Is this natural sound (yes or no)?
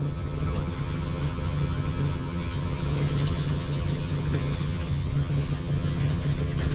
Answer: no